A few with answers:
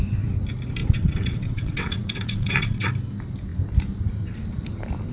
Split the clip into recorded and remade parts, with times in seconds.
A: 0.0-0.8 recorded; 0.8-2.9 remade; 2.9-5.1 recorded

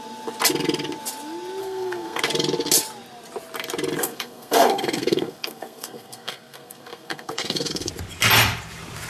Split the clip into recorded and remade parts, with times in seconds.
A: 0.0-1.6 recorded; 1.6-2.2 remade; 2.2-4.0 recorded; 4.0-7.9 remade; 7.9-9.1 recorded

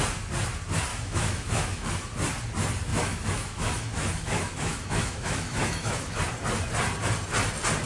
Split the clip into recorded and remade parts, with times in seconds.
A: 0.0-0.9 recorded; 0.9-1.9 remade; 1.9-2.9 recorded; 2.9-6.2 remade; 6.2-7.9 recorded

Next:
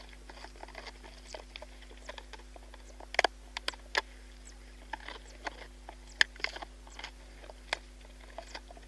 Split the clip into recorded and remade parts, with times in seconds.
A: 0.0-8.9 recorded